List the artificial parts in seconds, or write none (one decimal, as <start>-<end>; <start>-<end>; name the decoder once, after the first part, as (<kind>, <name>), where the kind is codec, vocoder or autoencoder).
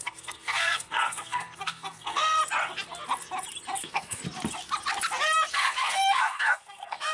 0.0-2.4 (codec, SNAC); 3.8-4.2; 5.5-7.1